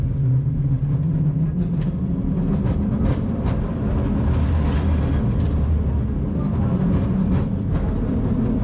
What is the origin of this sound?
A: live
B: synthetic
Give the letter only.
A